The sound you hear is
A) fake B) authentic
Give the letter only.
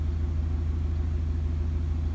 B